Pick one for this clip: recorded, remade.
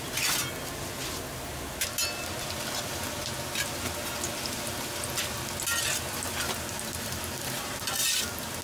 recorded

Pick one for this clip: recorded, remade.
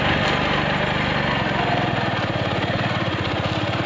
recorded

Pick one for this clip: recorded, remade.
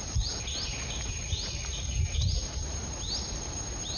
remade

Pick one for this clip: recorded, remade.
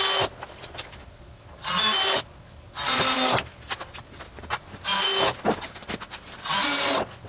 recorded